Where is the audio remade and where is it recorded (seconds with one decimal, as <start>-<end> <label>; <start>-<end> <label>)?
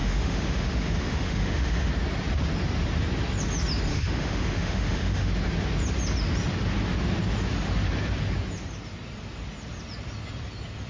0.0-1.9 remade; 1.9-3.9 recorded; 3.9-5.3 remade; 5.3-10.9 recorded